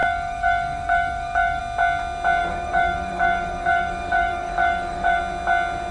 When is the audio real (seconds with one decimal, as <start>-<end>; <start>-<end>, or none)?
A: 1.6-2.4; 5.2-5.9